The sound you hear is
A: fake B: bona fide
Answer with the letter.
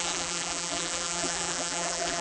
A